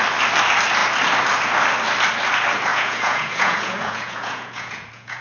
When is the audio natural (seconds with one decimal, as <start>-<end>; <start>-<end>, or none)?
0.0-2.7